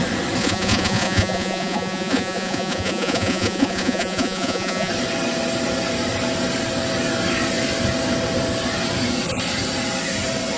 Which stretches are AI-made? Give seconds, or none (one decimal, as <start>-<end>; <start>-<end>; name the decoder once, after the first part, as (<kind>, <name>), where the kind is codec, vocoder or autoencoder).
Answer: 0.4-4.9 (vocoder, Vocos)